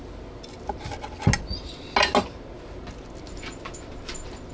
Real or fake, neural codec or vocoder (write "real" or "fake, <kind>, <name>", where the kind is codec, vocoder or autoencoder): real